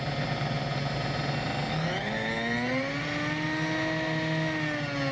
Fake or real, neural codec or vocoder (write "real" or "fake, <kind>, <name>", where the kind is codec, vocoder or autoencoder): real